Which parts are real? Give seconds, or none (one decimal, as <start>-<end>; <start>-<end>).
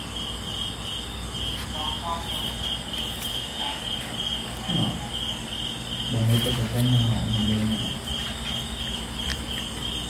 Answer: 0.0-3.3; 3.8-10.1